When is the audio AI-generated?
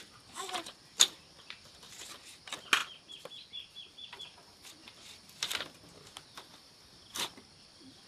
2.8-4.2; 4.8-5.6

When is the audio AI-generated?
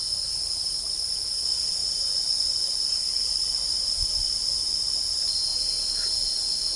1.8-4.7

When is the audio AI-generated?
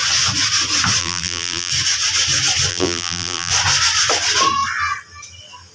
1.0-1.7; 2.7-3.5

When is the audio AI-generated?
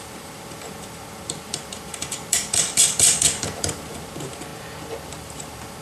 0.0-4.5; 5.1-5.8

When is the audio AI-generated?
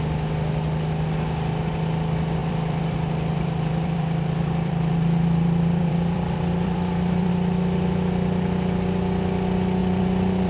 2.4-7.3; 9.8-10.5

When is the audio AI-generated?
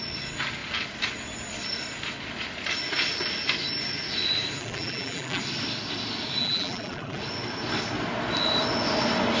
4.6-5.4; 6.4-7.2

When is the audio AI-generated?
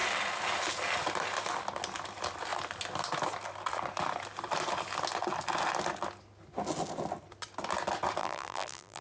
8.2-9.0